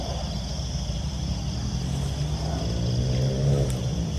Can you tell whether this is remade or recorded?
recorded